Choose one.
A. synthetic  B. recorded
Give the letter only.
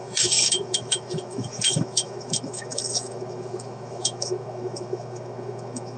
A